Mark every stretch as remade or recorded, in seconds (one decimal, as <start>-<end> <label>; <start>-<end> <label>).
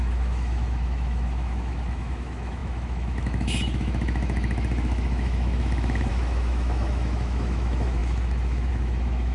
0.0-9.3 remade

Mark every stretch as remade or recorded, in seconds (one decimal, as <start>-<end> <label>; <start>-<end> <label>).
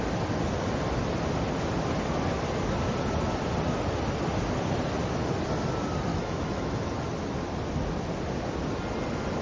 0.0-6.1 recorded; 6.1-6.7 remade; 6.7-9.4 recorded